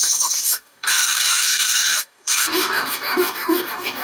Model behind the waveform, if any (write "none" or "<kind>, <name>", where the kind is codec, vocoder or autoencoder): codec, DAC